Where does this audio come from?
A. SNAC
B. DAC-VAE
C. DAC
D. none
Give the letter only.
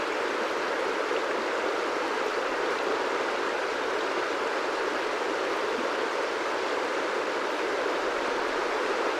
D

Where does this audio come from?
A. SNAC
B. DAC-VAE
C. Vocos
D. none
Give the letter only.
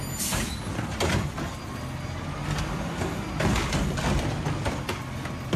D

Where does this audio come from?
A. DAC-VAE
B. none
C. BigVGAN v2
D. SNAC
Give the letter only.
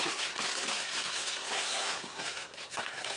D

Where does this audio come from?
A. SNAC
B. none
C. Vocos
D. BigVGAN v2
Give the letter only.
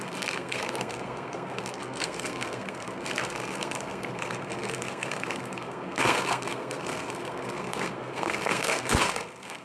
A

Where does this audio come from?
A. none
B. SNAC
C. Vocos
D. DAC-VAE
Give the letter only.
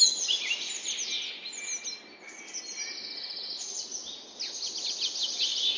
A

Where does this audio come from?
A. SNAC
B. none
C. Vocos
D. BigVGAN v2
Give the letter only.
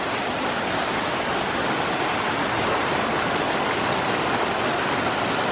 B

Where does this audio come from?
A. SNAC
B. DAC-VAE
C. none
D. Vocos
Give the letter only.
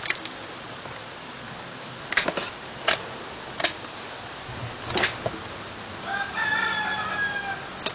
C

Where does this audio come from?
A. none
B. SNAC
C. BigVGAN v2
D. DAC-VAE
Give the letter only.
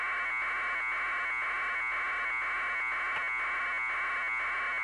A